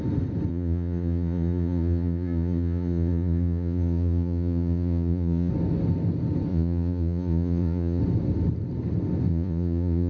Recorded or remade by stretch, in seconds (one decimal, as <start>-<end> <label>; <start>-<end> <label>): 0.0-0.5 recorded; 0.5-5.5 remade; 5.5-6.5 recorded; 6.5-8.0 remade; 8.0-9.3 recorded; 9.3-10.1 remade